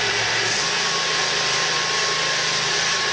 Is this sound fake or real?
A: real